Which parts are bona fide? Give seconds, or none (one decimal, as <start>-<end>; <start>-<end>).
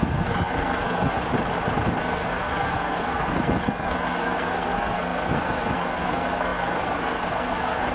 1.2-2.0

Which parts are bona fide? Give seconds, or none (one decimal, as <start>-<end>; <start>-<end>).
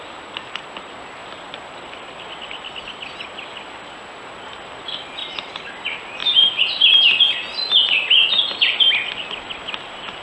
0.0-5.2; 5.7-6.2; 6.9-10.2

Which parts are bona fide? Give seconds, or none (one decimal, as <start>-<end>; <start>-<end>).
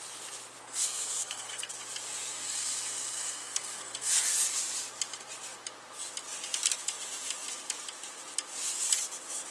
0.0-0.6; 1.7-2.3; 4.1-9.5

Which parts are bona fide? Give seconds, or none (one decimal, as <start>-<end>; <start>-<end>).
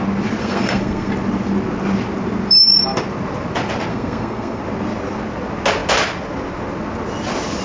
0.0-0.4; 1.1-3.9; 4.6-7.6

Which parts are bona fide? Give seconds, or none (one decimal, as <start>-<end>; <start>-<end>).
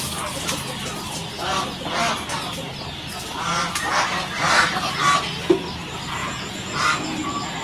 0.0-6.2; 6.8-7.6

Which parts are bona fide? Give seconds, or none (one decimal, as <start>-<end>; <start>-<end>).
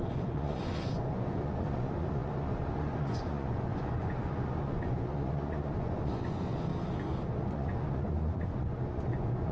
6.7-7.4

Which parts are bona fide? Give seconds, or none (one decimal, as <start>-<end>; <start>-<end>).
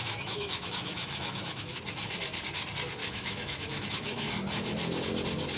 1.8-3.0; 4.3-5.6